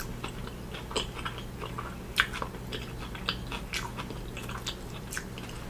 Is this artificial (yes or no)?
no